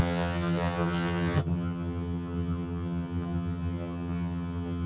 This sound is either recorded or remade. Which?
remade